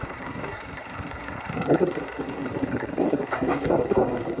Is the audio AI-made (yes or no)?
yes